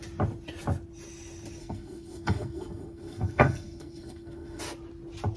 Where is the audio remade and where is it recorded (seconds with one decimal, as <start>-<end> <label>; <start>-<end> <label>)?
0.0-1.6 recorded; 1.6-4.6 remade; 4.6-5.4 recorded